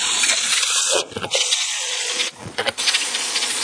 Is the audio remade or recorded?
remade